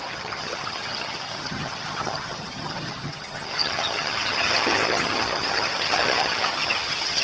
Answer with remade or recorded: remade